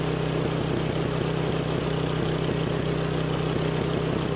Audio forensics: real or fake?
real